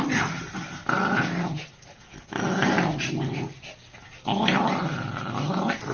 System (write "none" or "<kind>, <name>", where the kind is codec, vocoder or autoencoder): none